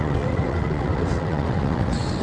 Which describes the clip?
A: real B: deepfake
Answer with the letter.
B